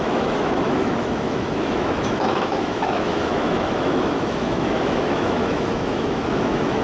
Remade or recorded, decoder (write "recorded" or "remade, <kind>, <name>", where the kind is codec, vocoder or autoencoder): remade, autoencoder, DAC-VAE